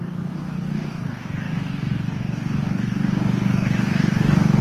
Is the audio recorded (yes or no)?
no